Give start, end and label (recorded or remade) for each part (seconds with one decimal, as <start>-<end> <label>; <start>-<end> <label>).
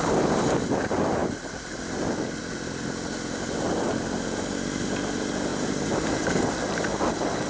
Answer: 0.0-7.5 recorded